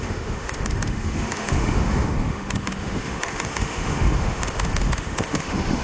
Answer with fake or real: fake